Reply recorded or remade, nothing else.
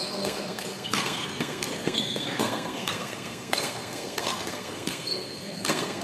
remade